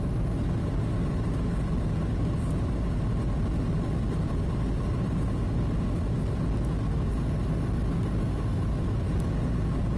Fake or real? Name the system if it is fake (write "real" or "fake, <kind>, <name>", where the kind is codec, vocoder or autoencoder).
real